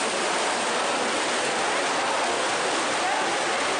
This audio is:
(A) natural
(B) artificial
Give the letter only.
A